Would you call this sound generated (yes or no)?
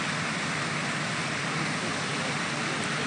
no